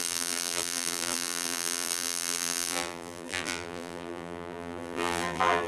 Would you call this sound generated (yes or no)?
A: yes